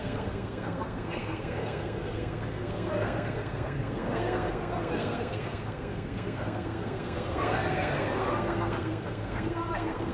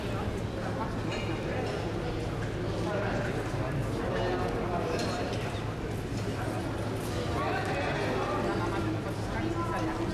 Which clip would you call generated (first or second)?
first